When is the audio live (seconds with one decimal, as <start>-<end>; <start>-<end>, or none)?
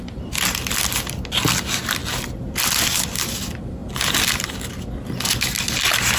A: 0.0-6.2